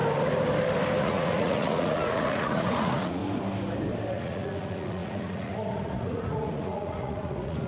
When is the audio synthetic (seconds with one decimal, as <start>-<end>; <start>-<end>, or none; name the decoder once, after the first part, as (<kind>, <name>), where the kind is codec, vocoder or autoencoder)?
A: 1.0-3.2 (vocoder, Vocos); 4.1-7.7